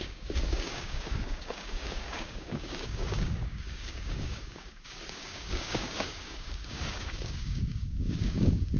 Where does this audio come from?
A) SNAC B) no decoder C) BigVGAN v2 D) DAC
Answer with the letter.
D